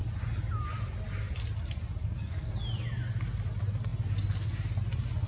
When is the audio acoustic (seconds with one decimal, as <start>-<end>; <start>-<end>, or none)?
0.0-2.0; 2.5-5.3